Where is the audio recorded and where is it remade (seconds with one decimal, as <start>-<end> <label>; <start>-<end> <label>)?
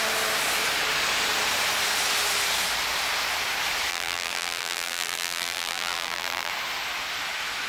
0.0-3.9 recorded; 3.9-6.5 remade; 6.5-7.7 recorded